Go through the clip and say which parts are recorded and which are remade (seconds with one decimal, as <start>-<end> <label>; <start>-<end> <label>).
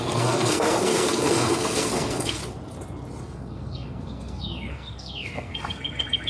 0.0-2.4 remade; 2.4-3.2 recorded; 3.2-6.3 remade